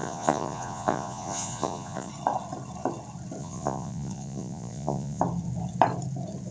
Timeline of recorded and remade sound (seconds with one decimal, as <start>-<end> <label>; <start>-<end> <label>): 0.0-2.1 remade; 2.1-3.4 recorded; 3.4-5.2 remade; 5.2-6.5 recorded